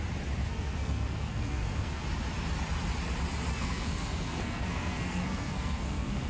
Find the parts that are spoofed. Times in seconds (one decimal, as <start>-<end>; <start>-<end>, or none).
0.4-2.0; 3.5-6.3